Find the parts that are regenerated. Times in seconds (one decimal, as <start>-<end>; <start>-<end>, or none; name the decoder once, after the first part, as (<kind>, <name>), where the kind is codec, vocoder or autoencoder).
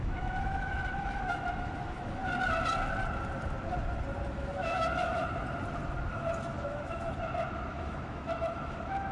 0.0-2.2 (autoencoder, DAC-VAE); 4.3-5.2; 6.1-7.1; 7.7-9.1